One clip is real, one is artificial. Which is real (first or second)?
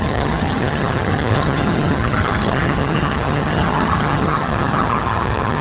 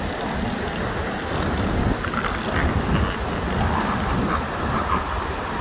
second